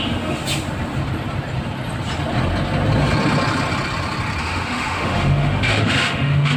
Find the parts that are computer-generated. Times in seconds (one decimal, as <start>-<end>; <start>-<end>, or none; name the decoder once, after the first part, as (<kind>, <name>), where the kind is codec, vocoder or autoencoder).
0.0-0.4 (autoencoder, DAC-VAE); 4.4-6.6